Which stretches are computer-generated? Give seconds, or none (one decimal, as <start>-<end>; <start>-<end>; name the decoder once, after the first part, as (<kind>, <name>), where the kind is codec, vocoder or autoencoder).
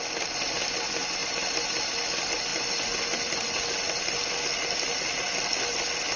none